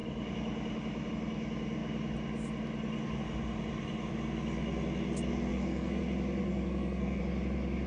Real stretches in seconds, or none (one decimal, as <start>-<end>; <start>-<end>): 0.0-5.5; 6.0-6.4; 7.2-7.9